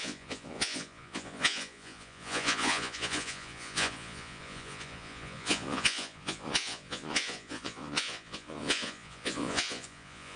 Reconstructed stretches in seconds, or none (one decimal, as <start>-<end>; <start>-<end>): 0.0-10.4